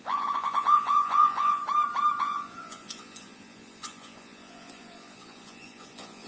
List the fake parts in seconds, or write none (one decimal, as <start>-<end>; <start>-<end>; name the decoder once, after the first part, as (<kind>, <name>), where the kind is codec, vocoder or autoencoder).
0.0-1.6 (vocoder, Vocos); 2.2-6.3